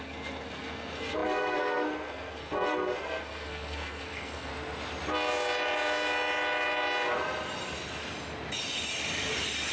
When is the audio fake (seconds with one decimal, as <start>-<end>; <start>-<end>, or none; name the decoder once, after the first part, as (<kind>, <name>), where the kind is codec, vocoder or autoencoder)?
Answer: 0.0-4.5 (codec, SNAC)